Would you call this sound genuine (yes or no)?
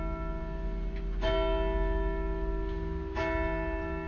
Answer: yes